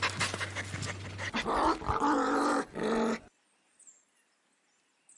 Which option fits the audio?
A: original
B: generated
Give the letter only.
A